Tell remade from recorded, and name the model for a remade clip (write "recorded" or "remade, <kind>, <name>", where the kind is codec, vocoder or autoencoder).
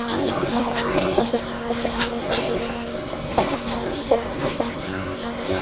remade, codec, SNAC